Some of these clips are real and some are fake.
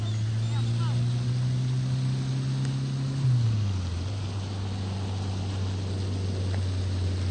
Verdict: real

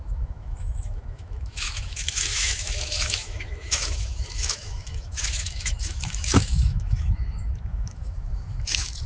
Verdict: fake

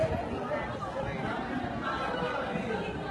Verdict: real